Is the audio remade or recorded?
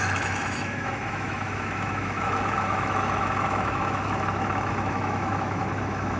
remade